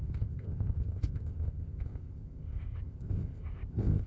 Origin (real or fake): fake